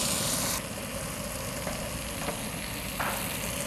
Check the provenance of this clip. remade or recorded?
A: recorded